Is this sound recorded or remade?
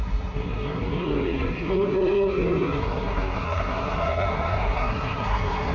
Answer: remade